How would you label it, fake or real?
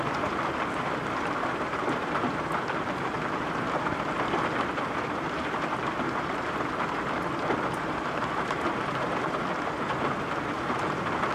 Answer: fake